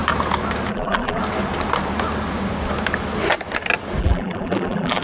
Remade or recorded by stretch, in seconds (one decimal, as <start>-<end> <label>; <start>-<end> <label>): 0.0-0.7 recorded; 0.7-1.2 remade; 1.2-4.0 recorded; 4.0-5.0 remade